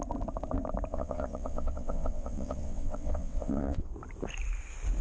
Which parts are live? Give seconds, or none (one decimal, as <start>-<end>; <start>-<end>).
0.0-0.9; 3.9-5.0